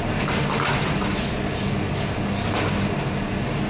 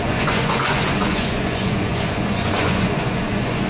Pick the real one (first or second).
first